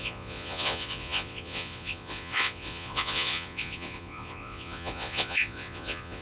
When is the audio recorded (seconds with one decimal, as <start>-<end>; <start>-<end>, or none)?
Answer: none